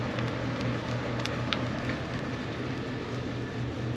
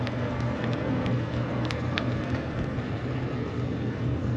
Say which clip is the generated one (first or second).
second